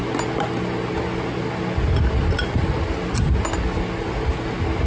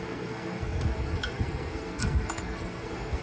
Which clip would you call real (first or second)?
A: first